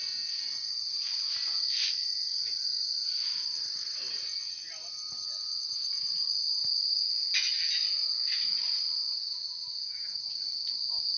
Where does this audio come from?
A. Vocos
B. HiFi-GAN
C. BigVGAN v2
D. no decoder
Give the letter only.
D